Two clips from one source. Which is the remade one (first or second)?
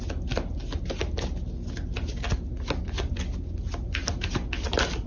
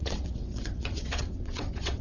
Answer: second